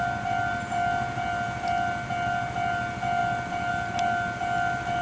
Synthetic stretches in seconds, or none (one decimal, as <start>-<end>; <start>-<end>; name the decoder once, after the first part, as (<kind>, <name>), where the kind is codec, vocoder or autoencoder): none